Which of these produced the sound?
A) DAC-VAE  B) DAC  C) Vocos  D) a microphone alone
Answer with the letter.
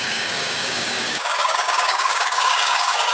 B